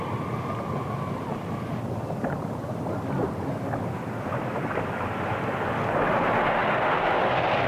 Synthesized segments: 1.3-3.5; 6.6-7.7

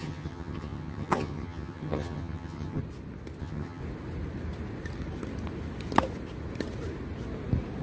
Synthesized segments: 0.0-2.8; 3.4-3.8

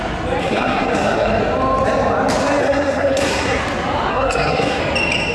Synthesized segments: 0.4-1.4; 2.6-3.6; 4.1-4.8